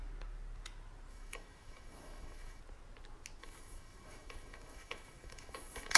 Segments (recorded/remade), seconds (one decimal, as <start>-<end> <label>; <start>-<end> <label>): 0.0-1.1 recorded; 1.1-2.6 remade; 2.6-3.4 recorded; 3.4-6.0 remade